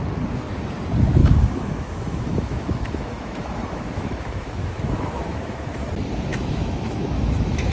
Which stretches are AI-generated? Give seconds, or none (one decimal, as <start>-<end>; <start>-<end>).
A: 1.2-5.7; 6.3-7.7